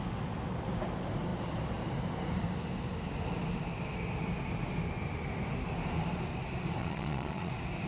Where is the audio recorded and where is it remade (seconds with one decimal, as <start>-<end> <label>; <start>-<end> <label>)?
0.0-6.8 recorded; 6.8-7.5 remade; 7.5-7.9 recorded